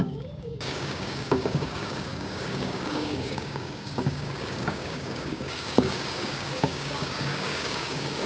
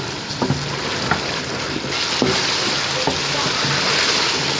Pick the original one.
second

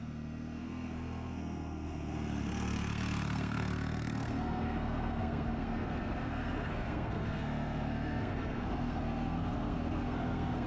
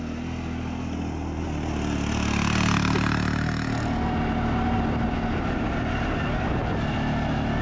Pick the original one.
second